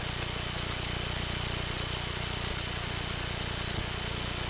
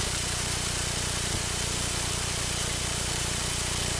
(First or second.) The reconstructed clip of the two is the second